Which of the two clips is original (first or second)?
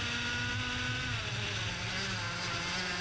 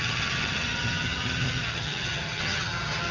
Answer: first